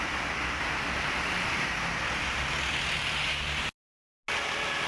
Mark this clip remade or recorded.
recorded